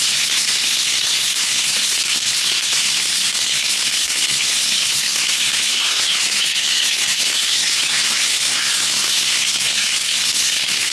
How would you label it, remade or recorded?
remade